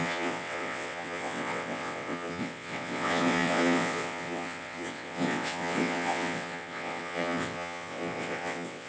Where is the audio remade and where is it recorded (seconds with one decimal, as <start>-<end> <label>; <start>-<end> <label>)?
0.0-8.9 remade